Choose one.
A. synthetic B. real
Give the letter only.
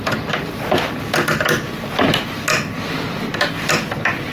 B